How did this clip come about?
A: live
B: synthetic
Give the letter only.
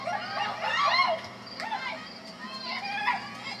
A